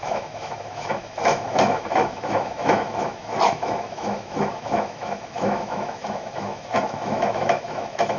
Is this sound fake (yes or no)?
yes